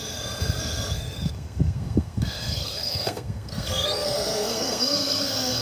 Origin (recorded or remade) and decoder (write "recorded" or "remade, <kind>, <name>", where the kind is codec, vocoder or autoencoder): remade, codec, SNAC